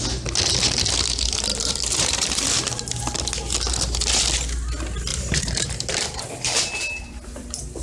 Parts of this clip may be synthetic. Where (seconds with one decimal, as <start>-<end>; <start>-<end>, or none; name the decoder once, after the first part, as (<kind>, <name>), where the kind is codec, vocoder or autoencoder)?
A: 1.5-3.0 (vocoder, BigVGAN v2); 5.1-6.2